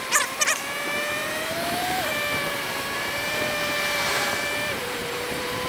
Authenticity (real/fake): fake